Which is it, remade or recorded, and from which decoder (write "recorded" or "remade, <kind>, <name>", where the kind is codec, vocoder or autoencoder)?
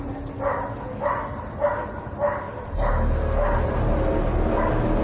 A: recorded